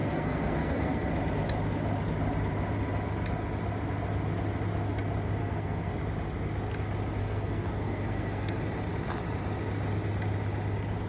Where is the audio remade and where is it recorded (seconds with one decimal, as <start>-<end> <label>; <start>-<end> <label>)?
0.0-1.1 remade; 1.1-5.4 recorded; 5.4-5.9 remade; 5.9-7.2 recorded; 7.2-8.6 remade; 8.6-11.1 recorded